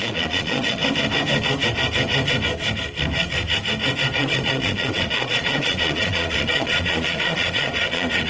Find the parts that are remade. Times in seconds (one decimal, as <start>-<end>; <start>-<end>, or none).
0.0-0.8; 4.2-8.3